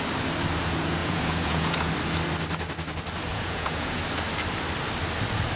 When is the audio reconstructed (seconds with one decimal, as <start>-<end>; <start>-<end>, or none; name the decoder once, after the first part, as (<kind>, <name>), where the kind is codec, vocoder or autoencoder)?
1.0-1.9 (vocoder, Vocos); 3.3-4.0